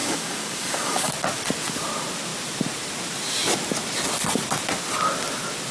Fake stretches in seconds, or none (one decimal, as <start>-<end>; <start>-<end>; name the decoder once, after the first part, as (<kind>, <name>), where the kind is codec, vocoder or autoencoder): 0.0-1.1 (codec, DAC)